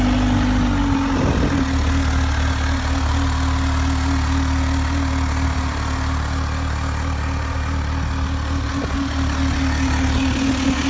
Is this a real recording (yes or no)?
yes